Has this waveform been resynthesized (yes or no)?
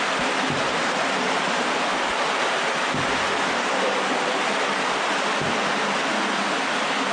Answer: no